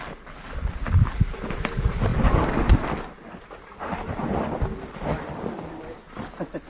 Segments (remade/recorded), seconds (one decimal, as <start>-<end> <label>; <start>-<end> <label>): 0.0-6.7 recorded